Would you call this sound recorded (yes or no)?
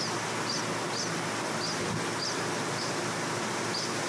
yes